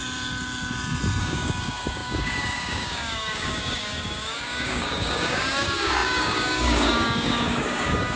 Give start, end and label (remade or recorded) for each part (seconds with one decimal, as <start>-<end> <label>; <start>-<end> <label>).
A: 0.0-1.2 recorded; 1.2-8.2 remade